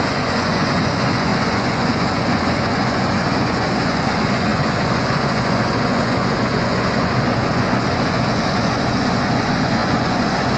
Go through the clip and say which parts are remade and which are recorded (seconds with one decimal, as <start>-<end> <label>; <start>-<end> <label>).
0.0-10.6 remade